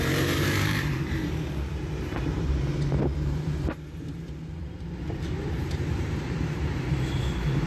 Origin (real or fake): fake